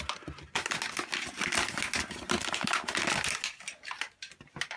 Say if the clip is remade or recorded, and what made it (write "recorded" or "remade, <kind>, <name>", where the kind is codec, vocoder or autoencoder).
recorded